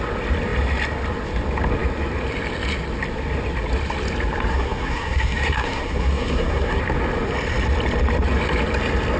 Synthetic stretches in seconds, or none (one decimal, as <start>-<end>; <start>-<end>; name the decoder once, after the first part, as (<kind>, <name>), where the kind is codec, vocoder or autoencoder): 4.5-6.8 (codec, SNAC)